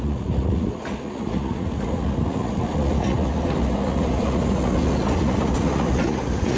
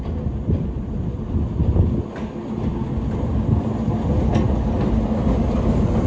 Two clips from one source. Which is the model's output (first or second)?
first